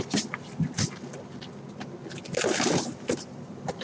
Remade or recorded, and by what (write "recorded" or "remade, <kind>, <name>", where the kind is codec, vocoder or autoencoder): recorded